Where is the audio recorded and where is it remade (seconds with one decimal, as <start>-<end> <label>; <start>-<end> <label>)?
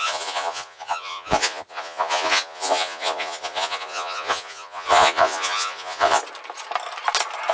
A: 0.0-6.2 remade; 6.2-7.5 recorded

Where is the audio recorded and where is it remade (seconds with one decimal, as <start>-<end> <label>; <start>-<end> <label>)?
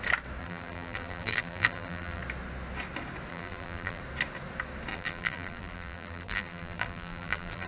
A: 0.0-0.4 recorded; 0.4-2.2 remade; 2.2-3.3 recorded; 3.3-4.0 remade; 4.0-4.9 recorded; 4.9-7.7 remade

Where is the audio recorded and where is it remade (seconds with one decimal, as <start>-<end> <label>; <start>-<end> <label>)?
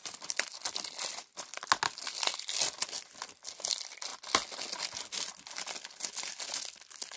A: 0.0-7.2 recorded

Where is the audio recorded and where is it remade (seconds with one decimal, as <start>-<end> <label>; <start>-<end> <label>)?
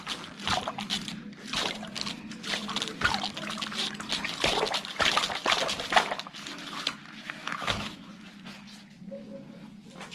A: 0.0-7.4 recorded; 7.4-8.1 remade; 8.1-10.1 recorded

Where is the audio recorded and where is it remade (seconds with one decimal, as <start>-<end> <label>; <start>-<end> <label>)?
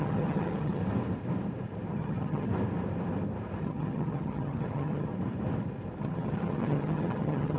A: 0.0-0.8 remade; 0.8-1.9 recorded; 1.9-2.5 remade; 2.5-3.6 recorded; 3.6-5.1 remade; 5.1-6.0 recorded; 6.0-7.6 remade